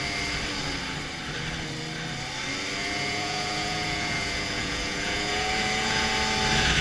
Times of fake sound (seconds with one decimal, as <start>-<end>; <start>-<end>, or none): 2.8-6.1